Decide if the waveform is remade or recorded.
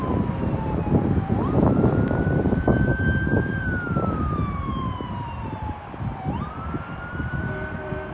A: remade